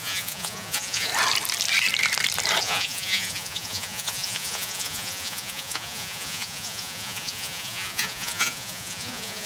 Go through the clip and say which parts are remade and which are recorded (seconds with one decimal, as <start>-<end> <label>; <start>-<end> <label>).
0.0-1.1 remade; 1.1-2.6 recorded; 2.6-9.5 remade